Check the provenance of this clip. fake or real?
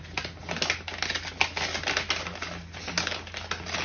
real